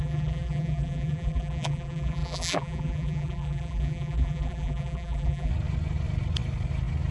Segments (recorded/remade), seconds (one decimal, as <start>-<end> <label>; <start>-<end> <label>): 0.0-5.5 remade; 5.5-7.1 recorded

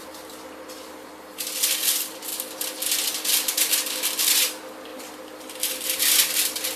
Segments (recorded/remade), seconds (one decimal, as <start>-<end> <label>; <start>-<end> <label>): 0.0-2.3 remade; 2.3-4.2 recorded; 4.2-6.0 remade; 6.0-6.8 recorded

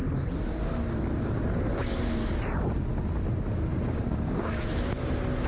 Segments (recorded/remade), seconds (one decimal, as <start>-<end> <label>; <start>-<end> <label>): 0.0-3.7 recorded; 3.7-4.5 remade; 4.5-5.5 recorded

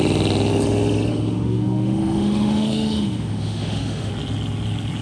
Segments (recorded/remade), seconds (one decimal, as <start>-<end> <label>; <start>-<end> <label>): 0.0-1.1 recorded; 1.1-4.1 remade; 4.1-5.0 recorded